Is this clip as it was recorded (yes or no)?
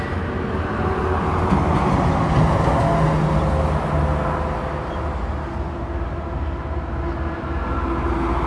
yes